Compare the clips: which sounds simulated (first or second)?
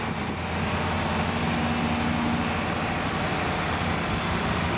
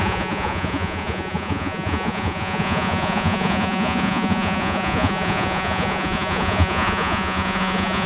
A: second